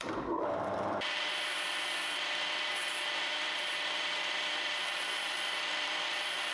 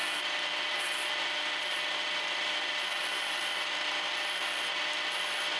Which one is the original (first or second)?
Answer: second